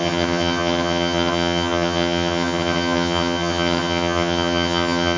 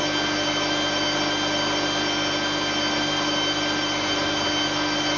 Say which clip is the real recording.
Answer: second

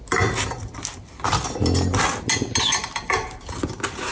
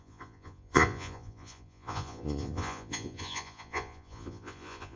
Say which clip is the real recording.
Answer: first